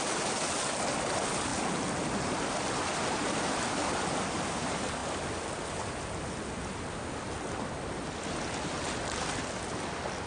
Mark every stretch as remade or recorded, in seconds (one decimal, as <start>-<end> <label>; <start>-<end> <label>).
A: 0.0-10.3 recorded